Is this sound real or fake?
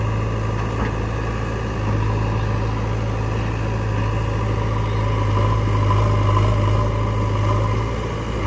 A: real